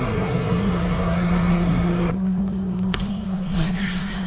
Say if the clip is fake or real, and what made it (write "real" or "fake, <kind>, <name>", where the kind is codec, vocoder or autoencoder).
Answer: fake, codec, SNAC